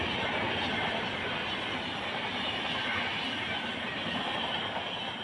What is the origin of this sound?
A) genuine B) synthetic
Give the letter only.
A